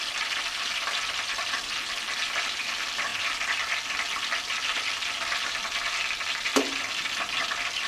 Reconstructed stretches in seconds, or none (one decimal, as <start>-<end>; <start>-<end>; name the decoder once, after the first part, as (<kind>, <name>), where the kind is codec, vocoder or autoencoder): none